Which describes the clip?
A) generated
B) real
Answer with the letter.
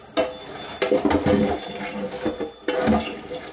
B